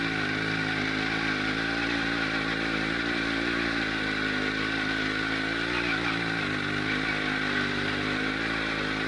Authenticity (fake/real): real